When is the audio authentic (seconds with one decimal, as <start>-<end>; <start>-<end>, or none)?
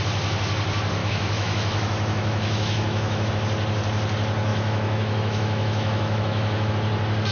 0.0-1.0; 3.3-4.5; 6.7-7.3